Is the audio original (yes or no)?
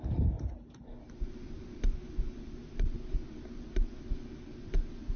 yes